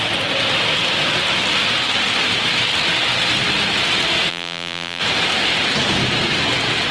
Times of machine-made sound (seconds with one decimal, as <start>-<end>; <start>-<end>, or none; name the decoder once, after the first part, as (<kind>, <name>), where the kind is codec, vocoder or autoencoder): 4.3-5.0 (vocoder, BigVGAN v2)

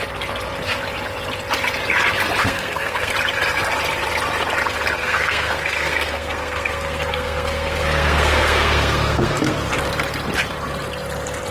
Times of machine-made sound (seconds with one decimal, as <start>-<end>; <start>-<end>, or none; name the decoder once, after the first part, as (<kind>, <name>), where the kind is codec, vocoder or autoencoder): 2.4-3.1 (codec, SNAC); 5.0-9.7

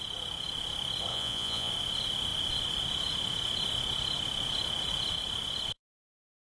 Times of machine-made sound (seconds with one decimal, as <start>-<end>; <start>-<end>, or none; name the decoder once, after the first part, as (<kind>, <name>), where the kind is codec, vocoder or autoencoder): 1.1-1.7 (vocoder, Vocos)

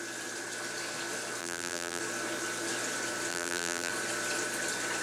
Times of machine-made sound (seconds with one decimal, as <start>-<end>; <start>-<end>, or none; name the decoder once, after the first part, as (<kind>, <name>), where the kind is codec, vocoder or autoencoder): 1.4-2.0 (vocoder, BigVGAN v2); 3.3-3.9

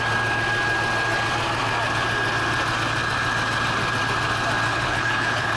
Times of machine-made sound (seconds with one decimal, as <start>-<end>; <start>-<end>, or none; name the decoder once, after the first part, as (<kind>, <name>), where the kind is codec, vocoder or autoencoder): 4.7-5.6 (codec, HILCodec)

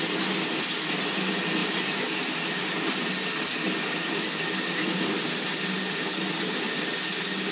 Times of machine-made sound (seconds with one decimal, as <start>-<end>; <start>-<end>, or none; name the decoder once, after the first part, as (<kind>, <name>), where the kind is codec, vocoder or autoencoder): none

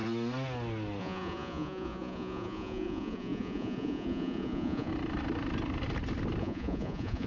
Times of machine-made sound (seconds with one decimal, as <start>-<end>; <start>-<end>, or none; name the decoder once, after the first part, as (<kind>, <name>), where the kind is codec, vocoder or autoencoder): 1.0-4.9 (vocoder, Vocos); 6.4-7.3